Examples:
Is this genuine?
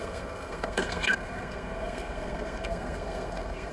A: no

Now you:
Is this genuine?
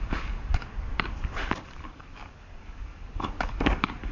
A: no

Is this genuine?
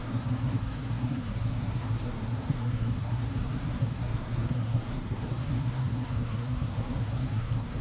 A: no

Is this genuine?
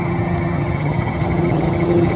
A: no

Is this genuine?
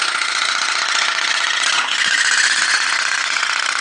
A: no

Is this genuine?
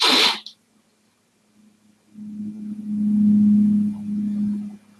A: yes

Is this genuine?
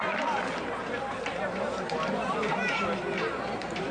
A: no